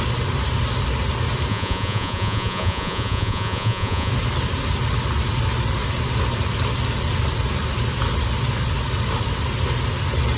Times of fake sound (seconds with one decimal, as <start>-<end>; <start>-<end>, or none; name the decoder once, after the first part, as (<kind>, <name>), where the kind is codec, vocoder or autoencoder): 1.5-4.1 (vocoder, Vocos)